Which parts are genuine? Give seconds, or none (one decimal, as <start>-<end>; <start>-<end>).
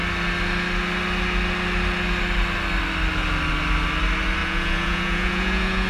0.0-4.4